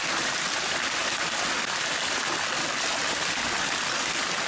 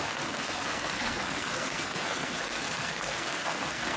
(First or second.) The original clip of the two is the first